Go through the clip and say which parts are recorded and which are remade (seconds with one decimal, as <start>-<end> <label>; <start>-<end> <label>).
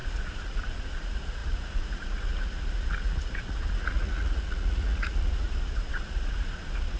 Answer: 0.0-7.0 remade